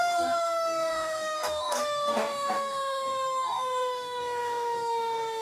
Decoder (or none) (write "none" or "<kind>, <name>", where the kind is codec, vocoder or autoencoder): codec, DAC